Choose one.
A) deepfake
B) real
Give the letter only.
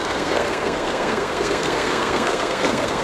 A